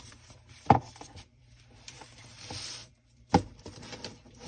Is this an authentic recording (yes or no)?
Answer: no